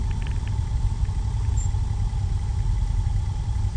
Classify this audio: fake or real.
real